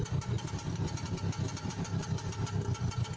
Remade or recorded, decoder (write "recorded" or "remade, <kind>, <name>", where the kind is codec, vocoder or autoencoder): recorded